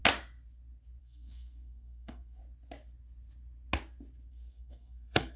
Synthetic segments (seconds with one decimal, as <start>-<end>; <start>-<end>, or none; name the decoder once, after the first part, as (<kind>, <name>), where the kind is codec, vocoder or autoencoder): 1.0-2.4 (codec, SNAC); 4.3-5.4